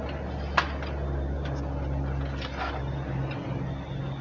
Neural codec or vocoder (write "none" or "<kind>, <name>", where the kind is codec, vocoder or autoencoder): none